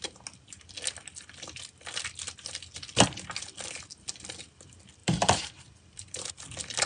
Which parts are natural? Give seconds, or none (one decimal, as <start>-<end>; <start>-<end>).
0.0-5.0; 6.3-6.9